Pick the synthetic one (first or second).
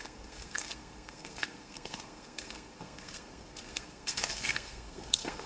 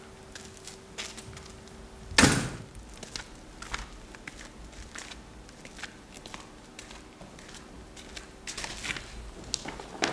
first